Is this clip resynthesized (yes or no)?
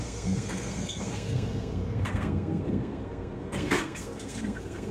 yes